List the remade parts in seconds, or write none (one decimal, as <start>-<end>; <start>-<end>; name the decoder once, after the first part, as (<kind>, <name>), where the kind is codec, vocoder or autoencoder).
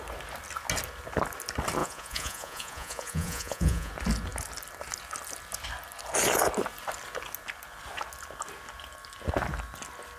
1.8-3.9 (vocoder, Vocos)